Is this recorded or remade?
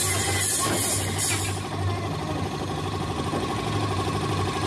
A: recorded